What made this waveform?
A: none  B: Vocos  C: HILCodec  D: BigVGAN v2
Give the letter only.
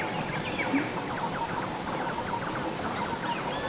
A